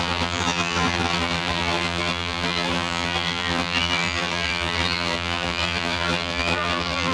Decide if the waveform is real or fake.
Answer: fake